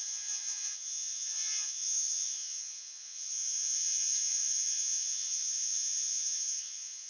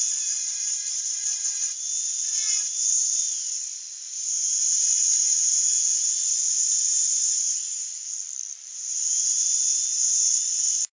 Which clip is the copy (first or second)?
first